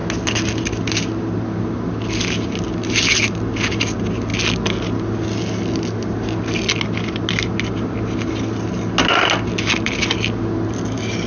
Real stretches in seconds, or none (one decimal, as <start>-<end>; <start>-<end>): 0.0-11.3

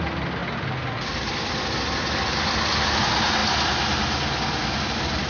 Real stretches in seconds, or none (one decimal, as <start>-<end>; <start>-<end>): 0.0-5.3

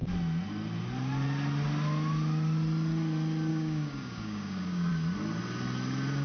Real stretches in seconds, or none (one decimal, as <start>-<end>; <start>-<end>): 0.0-3.5; 4.9-6.2

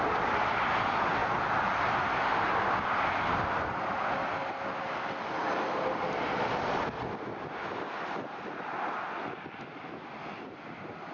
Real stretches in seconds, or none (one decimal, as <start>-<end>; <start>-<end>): 0.0-11.1

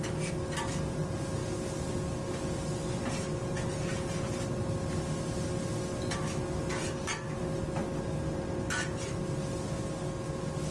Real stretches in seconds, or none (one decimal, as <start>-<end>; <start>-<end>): 0.0-10.7

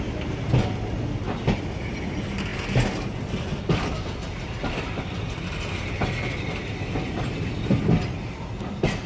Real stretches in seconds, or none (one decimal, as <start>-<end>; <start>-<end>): 0.0-9.1

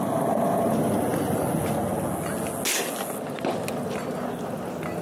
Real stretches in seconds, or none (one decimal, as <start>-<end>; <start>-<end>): 0.0-5.0

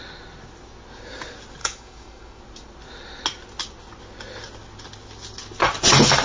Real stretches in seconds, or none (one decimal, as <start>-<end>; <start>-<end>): 0.0-1.6; 2.4-6.2